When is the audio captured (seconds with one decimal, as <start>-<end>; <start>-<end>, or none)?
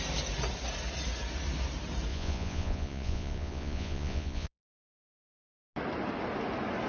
0.0-2.1; 5.5-6.9